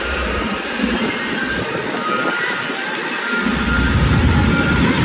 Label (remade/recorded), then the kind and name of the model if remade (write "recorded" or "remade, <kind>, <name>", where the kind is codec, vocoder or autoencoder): recorded